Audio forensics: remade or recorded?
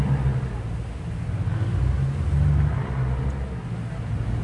recorded